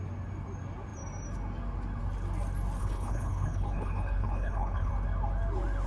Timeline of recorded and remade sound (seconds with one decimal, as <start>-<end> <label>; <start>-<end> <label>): 0.0-2.8 recorded; 2.8-4.9 remade; 4.9-5.9 recorded